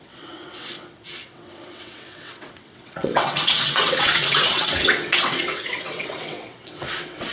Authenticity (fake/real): fake